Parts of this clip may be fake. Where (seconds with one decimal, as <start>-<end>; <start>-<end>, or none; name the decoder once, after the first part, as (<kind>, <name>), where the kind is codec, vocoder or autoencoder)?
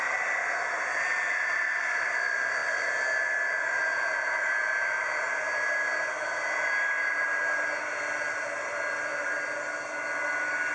none